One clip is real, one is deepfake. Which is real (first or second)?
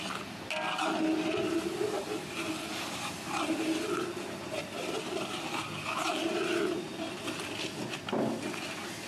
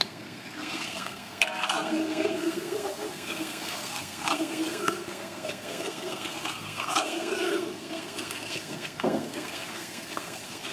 first